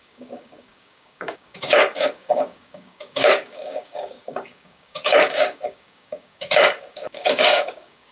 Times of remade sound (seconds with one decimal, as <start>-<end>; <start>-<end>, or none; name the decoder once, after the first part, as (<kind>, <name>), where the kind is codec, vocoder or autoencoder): 0.0-8.1 (codec, DAC)